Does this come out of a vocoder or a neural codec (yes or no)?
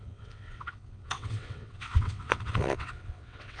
yes